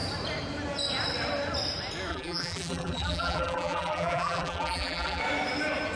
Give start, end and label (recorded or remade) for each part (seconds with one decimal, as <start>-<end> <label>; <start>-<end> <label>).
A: 0.0-2.1 recorded; 2.1-5.2 remade; 5.2-5.9 recorded